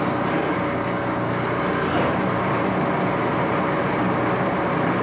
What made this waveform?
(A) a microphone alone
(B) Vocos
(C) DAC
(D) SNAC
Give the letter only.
A